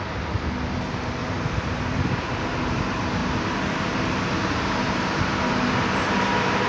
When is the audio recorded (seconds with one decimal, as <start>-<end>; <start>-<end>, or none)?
0.0-1.2; 2.4-3.2; 5.2-6.7

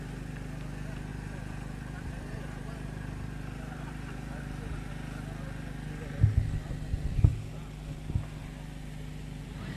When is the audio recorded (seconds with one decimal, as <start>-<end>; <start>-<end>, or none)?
0.0-1.1; 4.9-9.8